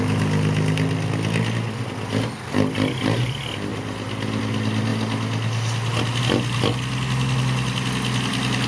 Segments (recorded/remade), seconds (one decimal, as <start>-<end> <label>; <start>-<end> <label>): 0.0-8.7 recorded